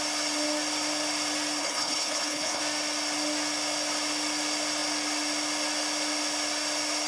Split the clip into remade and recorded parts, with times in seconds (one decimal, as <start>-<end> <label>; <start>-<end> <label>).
0.0-1.6 recorded; 1.6-2.6 remade; 2.6-7.1 recorded